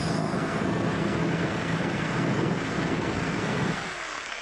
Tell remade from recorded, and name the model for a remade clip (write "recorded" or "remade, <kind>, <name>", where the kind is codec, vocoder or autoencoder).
remade, codec, SNAC